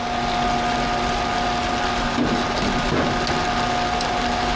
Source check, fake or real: real